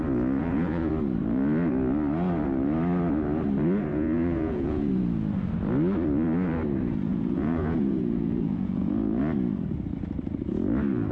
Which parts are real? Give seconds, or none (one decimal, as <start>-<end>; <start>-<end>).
0.0-0.4; 0.9-3.9; 4.9-7.1; 9.2-11.1